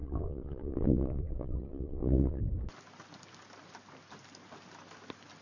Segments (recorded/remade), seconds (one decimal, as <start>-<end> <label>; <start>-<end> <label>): 0.0-2.4 remade; 2.4-5.4 recorded